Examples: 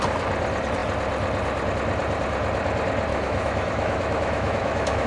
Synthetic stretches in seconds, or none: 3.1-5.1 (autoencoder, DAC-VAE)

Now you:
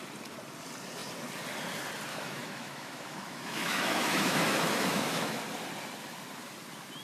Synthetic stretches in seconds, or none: 2.1-5.4 (autoencoder, DAC-VAE)

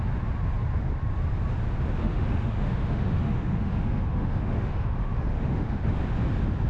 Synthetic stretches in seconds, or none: 2.0-6.0 (autoencoder, DAC-VAE)